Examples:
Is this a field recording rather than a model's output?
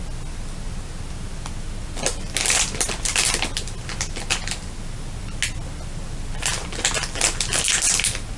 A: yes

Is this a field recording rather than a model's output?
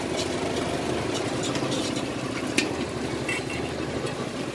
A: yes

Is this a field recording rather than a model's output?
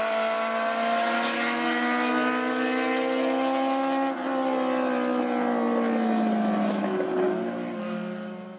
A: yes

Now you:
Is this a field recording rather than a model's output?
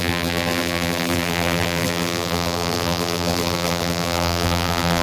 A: no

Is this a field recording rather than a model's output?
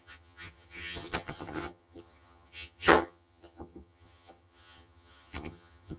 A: no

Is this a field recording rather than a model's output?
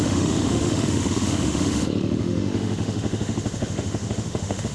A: no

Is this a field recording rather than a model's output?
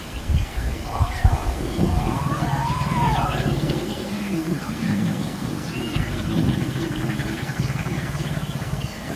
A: no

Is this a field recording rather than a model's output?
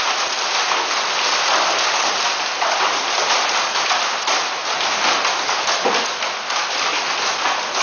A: yes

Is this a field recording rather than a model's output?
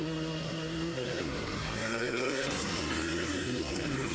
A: no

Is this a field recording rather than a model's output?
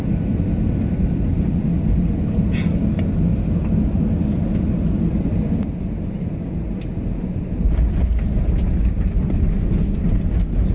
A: yes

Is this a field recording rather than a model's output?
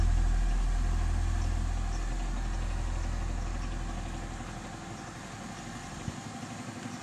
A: yes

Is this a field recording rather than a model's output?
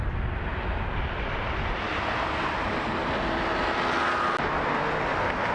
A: yes